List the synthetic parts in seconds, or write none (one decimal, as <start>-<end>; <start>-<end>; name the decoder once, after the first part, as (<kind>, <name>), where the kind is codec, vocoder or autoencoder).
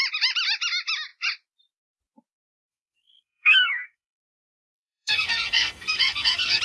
2.5-6.6 (codec, SNAC)